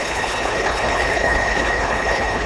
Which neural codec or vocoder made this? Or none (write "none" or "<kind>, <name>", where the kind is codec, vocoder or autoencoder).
codec, HILCodec